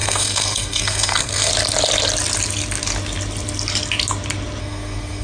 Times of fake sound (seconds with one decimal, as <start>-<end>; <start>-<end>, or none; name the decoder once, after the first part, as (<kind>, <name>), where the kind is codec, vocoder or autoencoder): 0.0-1.5 (codec, SNAC); 4.6-5.2